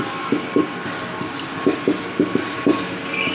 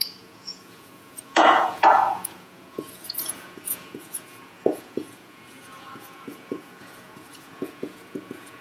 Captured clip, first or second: first